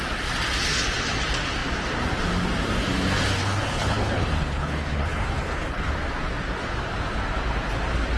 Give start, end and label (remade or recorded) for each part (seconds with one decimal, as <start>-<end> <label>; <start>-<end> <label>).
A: 0.0-3.4 recorded; 3.4-5.9 remade; 5.9-8.2 recorded